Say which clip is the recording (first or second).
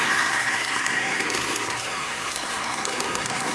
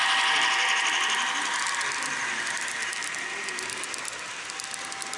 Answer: second